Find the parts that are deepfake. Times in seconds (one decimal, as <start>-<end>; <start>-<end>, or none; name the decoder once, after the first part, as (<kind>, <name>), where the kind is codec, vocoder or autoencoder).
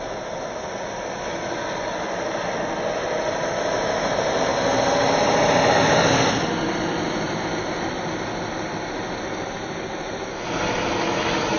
none